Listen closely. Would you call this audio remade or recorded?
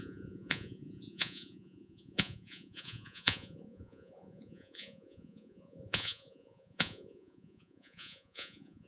remade